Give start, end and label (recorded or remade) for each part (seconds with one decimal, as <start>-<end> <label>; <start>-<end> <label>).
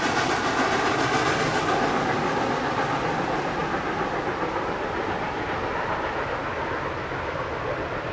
0.0-8.1 recorded